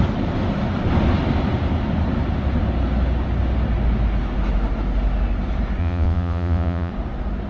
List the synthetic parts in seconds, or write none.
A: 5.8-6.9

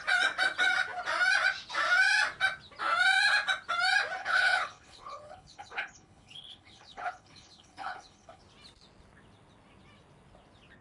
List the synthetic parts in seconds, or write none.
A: 4.2-8.4

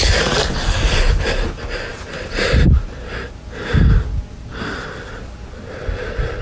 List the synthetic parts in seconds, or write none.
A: 1.9-3.2

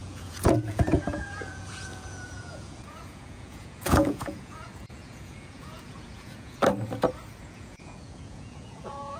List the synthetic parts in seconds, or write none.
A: 0.0-6.6; 7.4-9.2

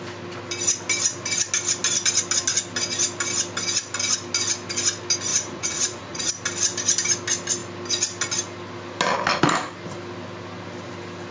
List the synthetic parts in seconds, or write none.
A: 5.3-6.3

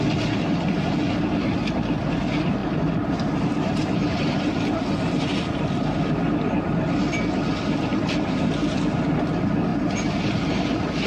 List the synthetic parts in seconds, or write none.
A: 2.6-4.4